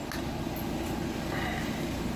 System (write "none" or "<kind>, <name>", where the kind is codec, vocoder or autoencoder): none